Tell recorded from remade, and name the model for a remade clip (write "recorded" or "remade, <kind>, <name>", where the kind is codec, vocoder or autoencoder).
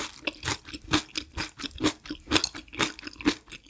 recorded